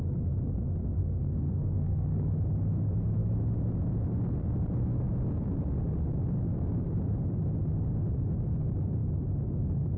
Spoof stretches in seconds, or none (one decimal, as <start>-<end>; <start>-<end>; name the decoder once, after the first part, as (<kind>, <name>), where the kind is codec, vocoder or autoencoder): 1.0-2.3 (codec, SNAC)